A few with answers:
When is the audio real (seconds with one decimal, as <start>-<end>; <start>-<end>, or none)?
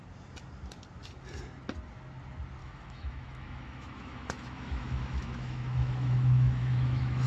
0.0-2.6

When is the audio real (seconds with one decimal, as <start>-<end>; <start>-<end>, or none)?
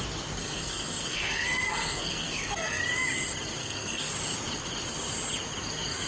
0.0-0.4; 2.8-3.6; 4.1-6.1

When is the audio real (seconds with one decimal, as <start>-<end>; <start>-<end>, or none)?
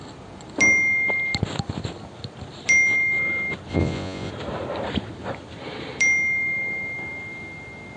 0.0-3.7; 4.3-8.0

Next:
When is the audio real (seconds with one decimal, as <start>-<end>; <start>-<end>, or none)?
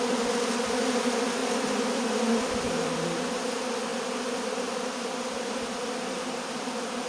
0.0-7.1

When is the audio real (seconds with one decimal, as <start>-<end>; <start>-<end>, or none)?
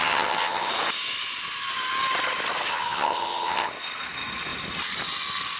0.7-2.7; 3.7-5.6